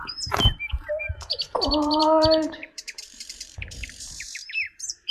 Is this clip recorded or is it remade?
remade